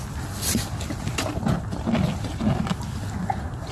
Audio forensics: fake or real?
real